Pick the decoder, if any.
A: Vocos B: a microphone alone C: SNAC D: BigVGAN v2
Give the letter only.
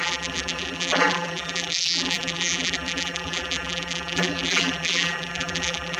D